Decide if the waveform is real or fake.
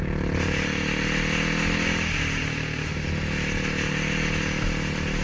real